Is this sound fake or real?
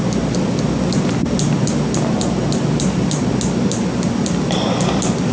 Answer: real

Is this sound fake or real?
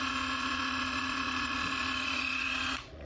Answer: fake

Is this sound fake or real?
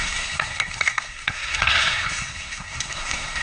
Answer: fake